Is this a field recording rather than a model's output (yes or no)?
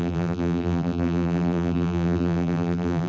no